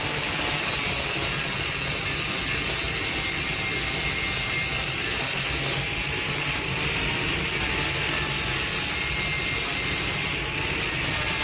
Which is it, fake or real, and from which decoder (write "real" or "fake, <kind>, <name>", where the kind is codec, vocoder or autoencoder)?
real